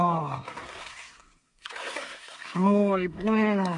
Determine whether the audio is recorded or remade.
remade